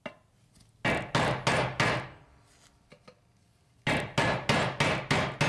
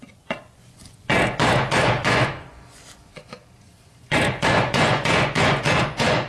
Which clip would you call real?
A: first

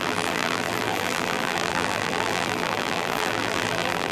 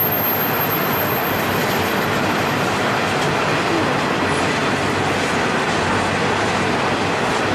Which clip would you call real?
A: second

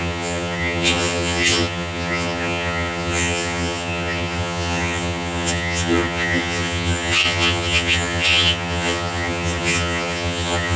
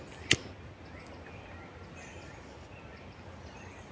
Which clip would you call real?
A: second